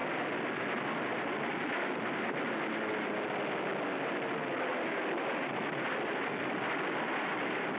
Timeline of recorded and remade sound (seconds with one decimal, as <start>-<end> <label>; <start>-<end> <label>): 0.0-7.8 recorded

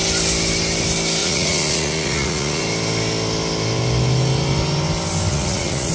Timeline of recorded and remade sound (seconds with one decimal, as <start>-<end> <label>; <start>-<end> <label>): 0.0-1.2 recorded; 1.2-2.6 remade; 2.6-5.3 recorded; 5.3-5.9 remade

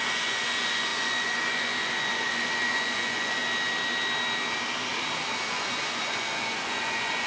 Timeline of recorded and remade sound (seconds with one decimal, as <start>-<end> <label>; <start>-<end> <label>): 0.0-3.4 remade; 3.4-5.5 recorded; 5.5-7.3 remade

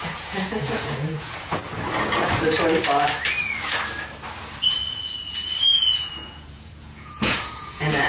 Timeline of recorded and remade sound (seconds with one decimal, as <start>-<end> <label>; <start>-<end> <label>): 0.0-1.6 remade; 1.6-4.7 recorded; 4.7-8.1 remade

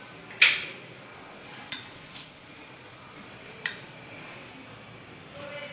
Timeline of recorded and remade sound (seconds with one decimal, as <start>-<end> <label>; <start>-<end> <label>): 0.0-1.1 recorded; 1.1-4.5 remade; 4.5-5.7 recorded